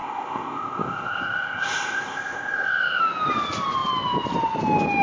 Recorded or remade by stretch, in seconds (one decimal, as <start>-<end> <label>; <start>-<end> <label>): 0.0-3.0 remade; 3.0-5.0 recorded